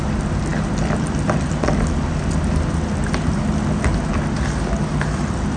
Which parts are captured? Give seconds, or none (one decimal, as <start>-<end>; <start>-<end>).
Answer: 0.0-5.6